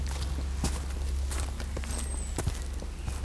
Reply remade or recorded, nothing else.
recorded